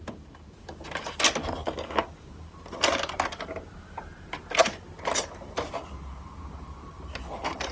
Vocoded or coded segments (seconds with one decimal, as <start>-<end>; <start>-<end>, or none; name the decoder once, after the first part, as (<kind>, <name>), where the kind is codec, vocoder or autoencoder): 1.6-2.3 (codec, DAC)